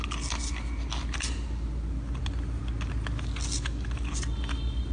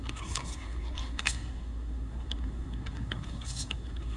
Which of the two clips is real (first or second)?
first